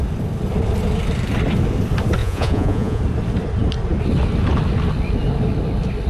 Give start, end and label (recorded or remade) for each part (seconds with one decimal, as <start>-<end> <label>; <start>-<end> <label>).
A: 0.0-2.2 recorded; 2.2-3.0 remade; 3.0-6.1 recorded